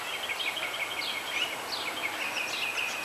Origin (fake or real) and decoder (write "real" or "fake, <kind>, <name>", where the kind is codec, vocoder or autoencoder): real